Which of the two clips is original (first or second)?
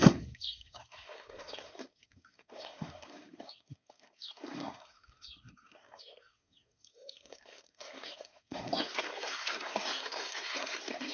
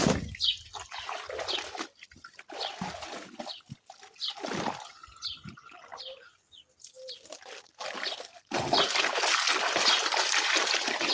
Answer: second